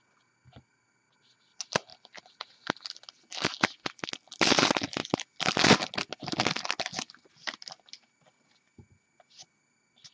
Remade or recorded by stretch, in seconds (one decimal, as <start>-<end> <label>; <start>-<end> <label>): 0.0-10.1 recorded